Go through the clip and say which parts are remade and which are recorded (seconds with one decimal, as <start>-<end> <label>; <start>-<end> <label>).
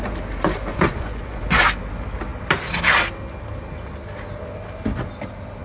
0.0-0.7 recorded; 0.7-1.6 remade; 1.6-5.6 recorded